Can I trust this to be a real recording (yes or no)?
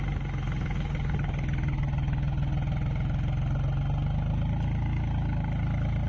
yes